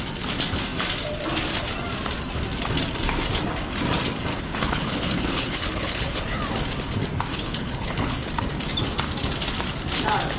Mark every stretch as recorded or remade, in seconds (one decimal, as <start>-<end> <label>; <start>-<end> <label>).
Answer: 0.0-4.3 recorded; 4.3-6.4 remade; 6.4-7.3 recorded; 7.3-8.3 remade; 8.3-10.4 recorded